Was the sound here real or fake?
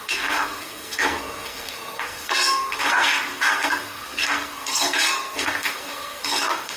fake